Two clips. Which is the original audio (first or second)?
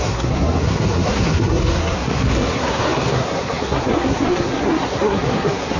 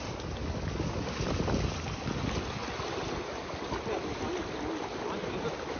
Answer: second